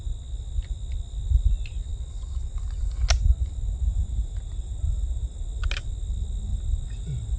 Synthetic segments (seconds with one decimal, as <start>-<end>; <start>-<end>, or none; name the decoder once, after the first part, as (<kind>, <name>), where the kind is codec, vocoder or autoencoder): none